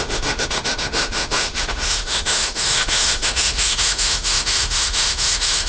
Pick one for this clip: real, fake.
fake